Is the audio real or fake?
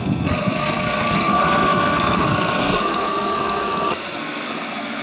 fake